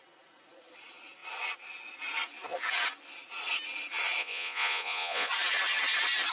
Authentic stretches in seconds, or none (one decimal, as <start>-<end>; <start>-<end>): 0.0-4.2; 5.3-6.3